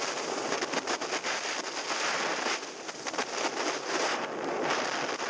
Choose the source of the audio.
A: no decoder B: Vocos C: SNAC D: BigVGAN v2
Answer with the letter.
D